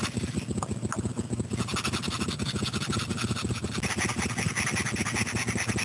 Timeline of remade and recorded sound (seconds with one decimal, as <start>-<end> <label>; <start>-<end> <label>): 0.0-5.8 recorded